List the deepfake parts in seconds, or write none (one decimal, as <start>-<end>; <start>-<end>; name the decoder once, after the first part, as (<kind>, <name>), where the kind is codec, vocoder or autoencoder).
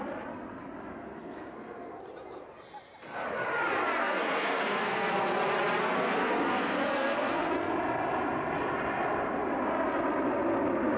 0.9-2.0 (codec, SNAC); 4.0-5.1; 5.8-7.5